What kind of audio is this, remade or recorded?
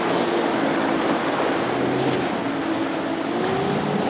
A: recorded